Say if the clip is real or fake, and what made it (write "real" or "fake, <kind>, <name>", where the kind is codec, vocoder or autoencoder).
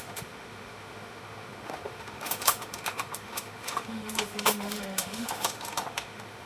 fake, autoencoder, DAC-VAE